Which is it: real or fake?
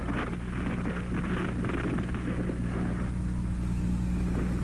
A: real